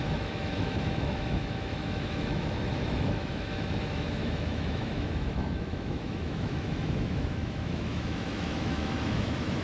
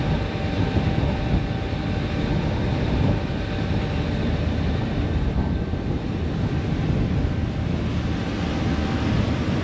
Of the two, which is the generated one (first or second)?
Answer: first